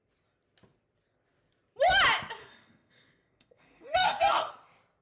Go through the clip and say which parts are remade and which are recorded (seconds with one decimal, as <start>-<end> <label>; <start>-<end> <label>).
0.0-2.4 recorded; 2.4-4.5 remade; 4.5-5.0 recorded